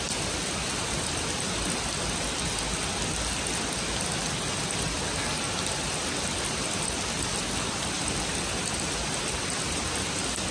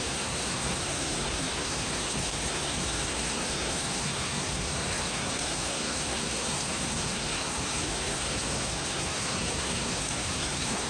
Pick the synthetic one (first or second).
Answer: second